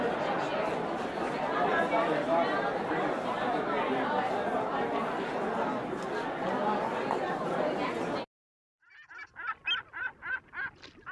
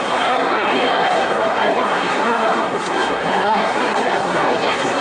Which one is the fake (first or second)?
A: second